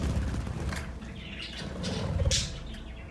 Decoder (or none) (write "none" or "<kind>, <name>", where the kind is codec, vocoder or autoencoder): none